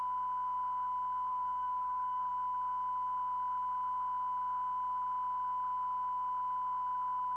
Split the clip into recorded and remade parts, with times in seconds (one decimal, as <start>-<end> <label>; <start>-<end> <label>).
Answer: 0.0-1.3 recorded; 1.3-2.3 remade; 2.3-7.4 recorded